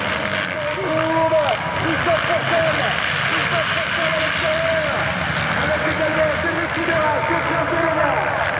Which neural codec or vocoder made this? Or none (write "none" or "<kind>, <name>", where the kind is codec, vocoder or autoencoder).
none